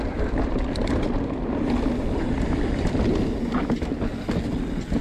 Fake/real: real